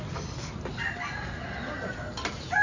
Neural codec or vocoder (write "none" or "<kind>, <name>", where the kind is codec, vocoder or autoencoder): none